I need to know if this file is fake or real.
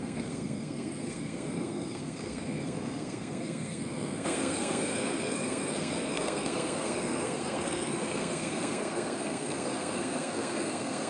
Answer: fake